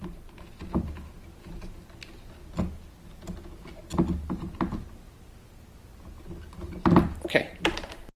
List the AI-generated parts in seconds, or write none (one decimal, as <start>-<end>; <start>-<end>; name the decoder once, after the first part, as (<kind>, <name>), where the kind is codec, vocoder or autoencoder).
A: none